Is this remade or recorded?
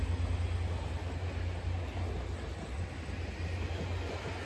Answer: recorded